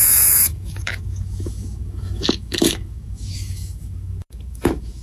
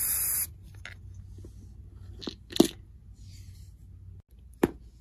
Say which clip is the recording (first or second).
second